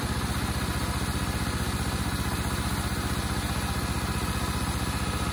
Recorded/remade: recorded